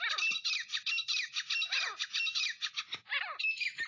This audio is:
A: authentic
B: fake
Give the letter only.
A